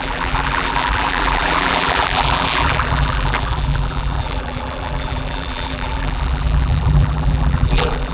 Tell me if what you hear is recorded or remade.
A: remade